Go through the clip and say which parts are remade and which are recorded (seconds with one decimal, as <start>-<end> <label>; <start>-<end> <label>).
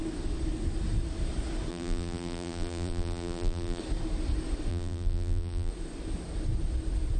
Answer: 0.0-1.7 recorded; 1.7-3.8 remade; 3.8-4.7 recorded; 4.7-5.7 remade; 5.7-7.2 recorded